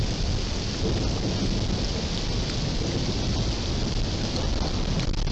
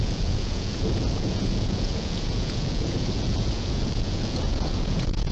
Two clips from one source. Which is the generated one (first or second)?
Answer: second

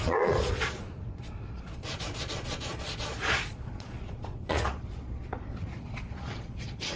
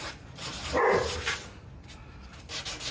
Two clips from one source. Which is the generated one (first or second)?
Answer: first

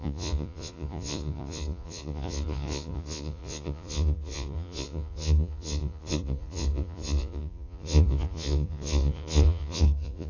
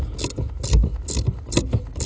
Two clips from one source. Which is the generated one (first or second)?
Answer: first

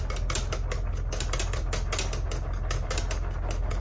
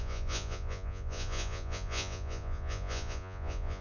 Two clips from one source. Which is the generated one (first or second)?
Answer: second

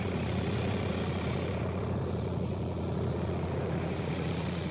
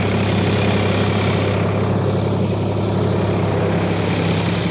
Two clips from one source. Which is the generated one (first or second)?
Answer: first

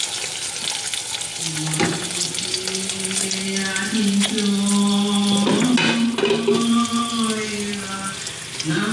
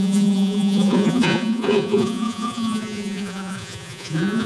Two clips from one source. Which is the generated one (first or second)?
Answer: second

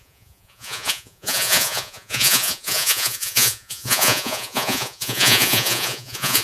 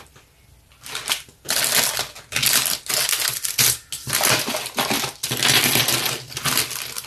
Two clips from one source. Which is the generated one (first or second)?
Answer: first